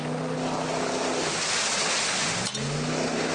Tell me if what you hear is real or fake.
real